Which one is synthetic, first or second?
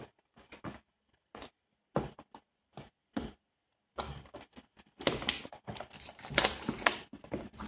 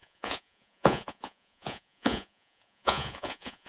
second